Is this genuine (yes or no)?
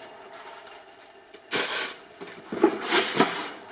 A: yes